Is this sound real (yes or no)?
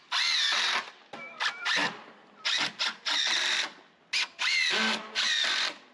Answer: yes